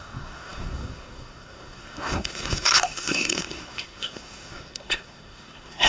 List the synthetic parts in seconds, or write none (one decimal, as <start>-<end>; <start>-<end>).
0.0-5.9